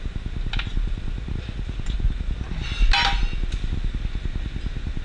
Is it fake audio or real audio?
real